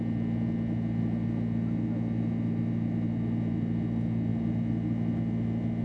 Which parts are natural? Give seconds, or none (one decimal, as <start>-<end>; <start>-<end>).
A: 0.0-5.8